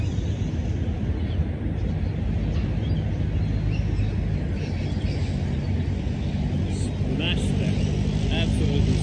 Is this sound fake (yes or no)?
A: no